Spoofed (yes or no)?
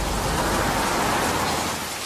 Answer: no